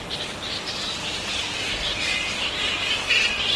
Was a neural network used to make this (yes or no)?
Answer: no